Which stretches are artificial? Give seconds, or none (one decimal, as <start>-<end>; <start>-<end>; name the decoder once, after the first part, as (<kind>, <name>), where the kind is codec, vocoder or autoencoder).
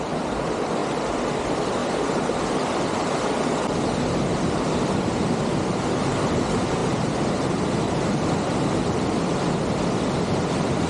0.0-0.8 (vocoder, BigVGAN v2); 1.4-1.8; 4.5-10.9